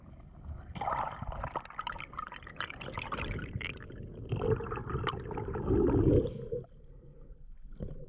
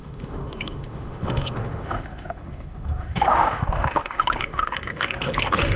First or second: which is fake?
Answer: second